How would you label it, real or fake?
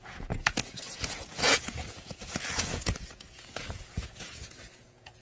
fake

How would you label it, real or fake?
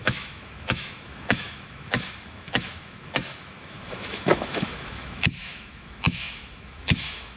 fake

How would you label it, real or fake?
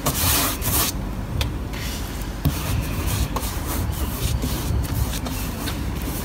fake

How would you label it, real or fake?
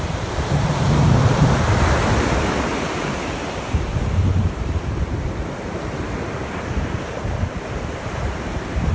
fake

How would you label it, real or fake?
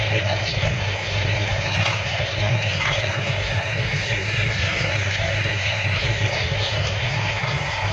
fake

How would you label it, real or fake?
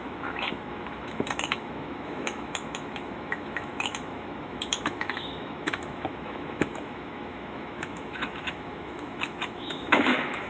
fake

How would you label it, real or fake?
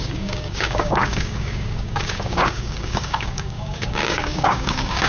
fake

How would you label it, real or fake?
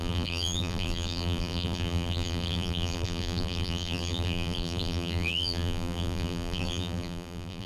fake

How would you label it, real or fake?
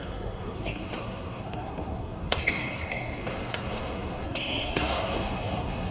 fake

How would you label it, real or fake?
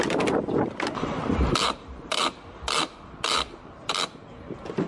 real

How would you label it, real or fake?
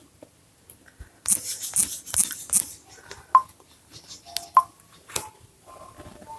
real